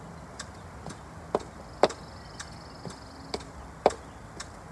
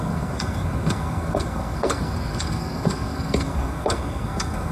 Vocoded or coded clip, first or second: second